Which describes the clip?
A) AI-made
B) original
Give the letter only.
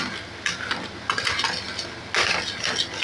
B